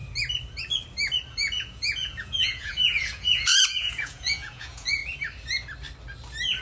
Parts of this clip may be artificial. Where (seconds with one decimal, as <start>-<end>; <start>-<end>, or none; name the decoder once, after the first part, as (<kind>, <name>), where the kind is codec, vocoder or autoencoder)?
1.3-5.0 (vocoder, Vocos)